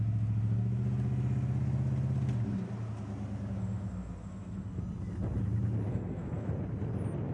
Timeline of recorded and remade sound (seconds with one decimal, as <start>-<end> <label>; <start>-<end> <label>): 0.0-3.6 recorded; 3.6-4.8 remade; 4.8-5.9 recorded; 5.9-6.5 remade; 6.5-7.3 recorded